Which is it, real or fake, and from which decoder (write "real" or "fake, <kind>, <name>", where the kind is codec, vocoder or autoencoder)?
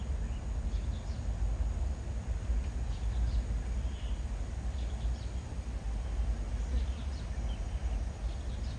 real